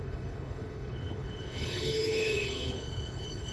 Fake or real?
fake